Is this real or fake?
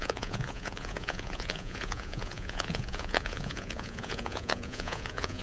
fake